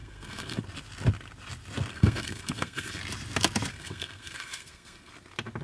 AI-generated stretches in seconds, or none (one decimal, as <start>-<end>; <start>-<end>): 0.0-0.6; 1.9-3.0; 3.7-5.1